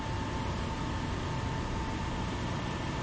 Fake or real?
real